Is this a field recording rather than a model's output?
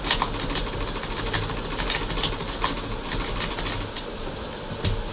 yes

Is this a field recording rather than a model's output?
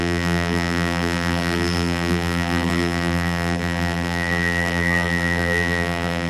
no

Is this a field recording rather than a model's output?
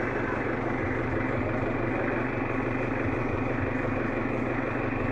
yes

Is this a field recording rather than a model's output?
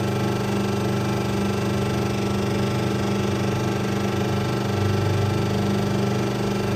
yes